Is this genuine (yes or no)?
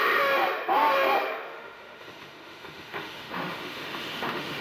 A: no